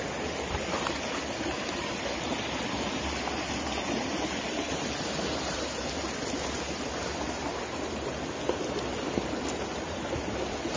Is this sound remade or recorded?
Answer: recorded